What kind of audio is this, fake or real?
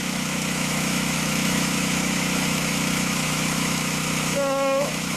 fake